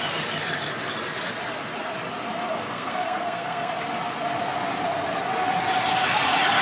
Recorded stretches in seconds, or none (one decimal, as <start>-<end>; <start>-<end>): 0.0-2.5; 3.7-6.6